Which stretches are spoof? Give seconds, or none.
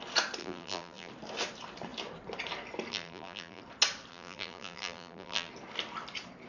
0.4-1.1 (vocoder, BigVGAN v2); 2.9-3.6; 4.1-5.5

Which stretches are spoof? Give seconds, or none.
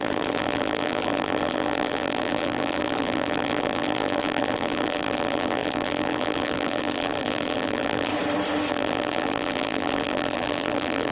0.0-8.1 (vocoder, BigVGAN v2); 8.7-11.1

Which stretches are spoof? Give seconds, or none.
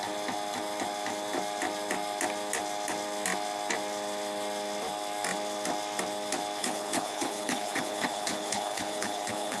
6.6-9.6 (codec, HILCodec)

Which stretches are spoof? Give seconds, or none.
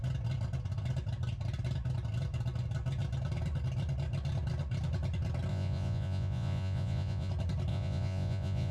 5.5-7.3 (vocoder, Vocos); 7.7-8.7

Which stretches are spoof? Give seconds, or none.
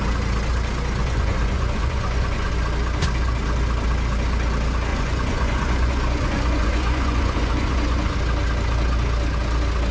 1.0-2.5 (vocoder, Vocos); 4.9-8.2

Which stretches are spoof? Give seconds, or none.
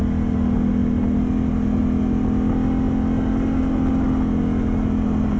none